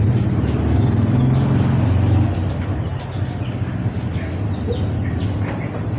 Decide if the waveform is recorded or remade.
recorded